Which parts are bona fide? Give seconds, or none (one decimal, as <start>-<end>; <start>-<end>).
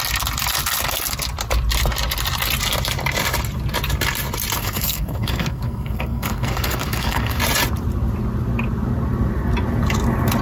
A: 0.0-4.6; 7.4-10.4